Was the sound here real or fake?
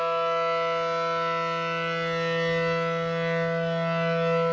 real